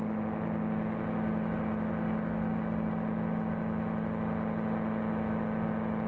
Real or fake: real